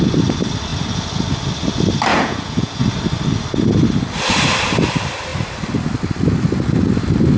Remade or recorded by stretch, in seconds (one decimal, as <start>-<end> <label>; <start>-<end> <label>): 0.0-2.1 recorded; 2.1-2.8 remade; 2.8-7.4 recorded